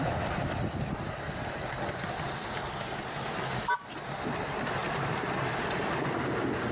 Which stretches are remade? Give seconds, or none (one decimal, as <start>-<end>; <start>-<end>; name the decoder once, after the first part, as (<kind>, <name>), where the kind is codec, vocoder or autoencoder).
none